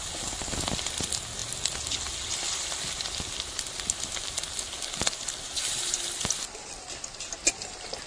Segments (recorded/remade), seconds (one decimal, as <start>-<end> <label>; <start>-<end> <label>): 0.0-8.1 recorded